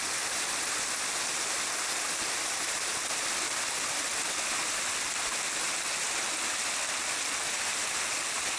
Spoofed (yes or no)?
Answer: no